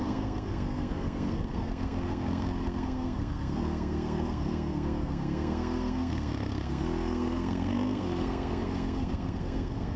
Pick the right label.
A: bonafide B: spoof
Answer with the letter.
B